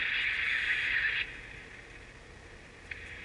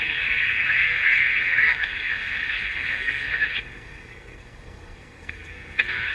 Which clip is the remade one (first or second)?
second